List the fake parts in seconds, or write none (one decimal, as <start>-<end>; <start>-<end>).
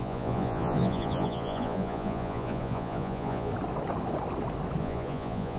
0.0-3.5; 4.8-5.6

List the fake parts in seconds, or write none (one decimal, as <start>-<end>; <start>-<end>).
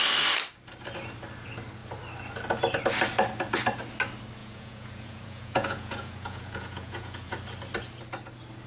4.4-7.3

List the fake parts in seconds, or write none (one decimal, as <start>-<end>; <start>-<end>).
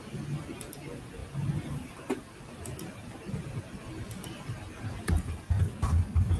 none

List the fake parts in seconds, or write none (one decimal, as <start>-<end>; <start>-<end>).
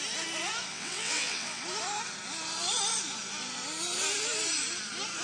0.7-1.6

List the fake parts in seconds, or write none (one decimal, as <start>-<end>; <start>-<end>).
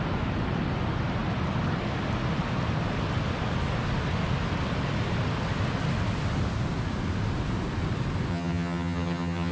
8.3-9.5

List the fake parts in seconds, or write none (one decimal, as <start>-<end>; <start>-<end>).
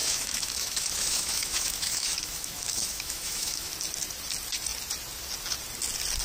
0.0-3.7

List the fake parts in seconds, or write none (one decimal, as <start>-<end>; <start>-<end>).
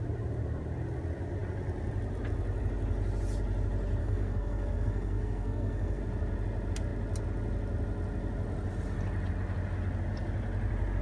4.0-6.0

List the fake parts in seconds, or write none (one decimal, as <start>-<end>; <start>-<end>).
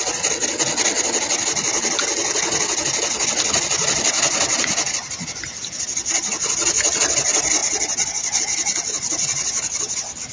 none